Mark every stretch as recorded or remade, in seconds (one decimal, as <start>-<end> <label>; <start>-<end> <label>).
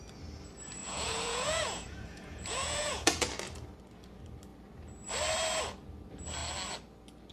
0.0-0.8 recorded; 0.8-3.3 remade; 3.3-7.3 recorded